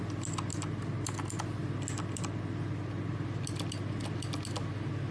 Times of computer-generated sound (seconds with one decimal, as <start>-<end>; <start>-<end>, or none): none